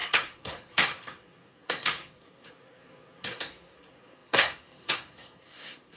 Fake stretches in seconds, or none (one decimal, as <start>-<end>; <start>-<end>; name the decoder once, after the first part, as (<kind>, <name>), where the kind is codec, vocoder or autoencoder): 0.0-6.0 (codec, SNAC)